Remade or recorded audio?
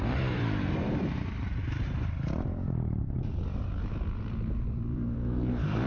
remade